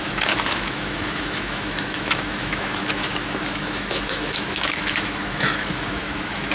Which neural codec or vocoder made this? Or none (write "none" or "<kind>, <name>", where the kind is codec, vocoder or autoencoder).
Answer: autoencoder, DAC-VAE